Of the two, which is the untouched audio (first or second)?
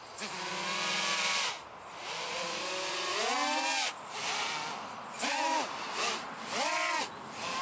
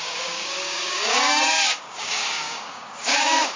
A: first